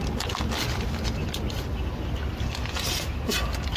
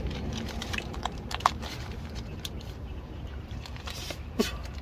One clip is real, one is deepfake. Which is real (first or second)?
first